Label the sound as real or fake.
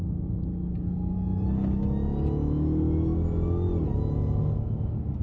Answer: real